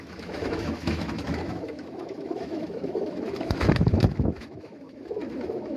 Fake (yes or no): yes